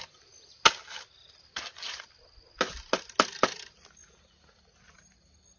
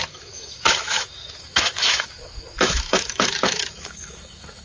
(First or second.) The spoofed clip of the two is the second